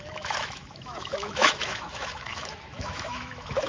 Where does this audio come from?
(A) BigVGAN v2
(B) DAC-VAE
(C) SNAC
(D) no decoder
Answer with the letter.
B